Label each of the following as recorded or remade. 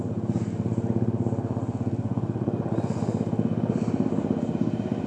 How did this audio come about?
recorded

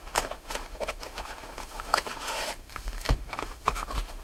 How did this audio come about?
remade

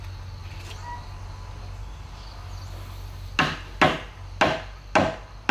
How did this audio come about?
recorded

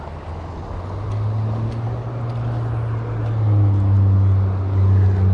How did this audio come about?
recorded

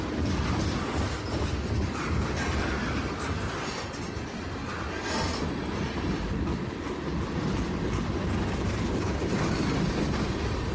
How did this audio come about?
recorded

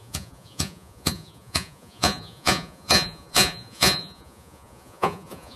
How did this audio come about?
remade